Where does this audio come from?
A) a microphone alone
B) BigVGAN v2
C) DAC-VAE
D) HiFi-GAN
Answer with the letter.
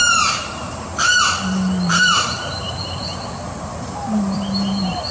B